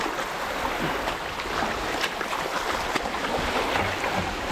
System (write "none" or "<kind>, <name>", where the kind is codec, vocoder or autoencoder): none